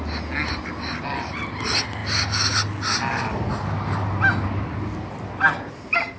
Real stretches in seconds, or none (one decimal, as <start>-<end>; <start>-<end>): 0.0-6.2